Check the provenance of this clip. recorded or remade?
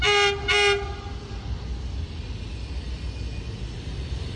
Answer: recorded